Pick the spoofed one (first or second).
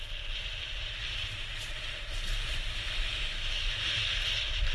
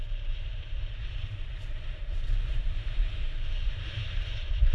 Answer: second